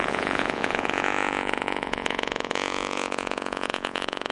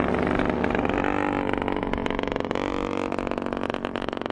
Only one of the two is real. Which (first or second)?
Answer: second